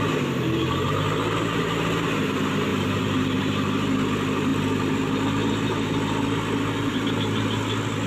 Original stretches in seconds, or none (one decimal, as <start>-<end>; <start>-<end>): 0.0-2.7; 3.4-8.1